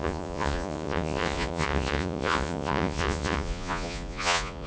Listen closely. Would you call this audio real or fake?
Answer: fake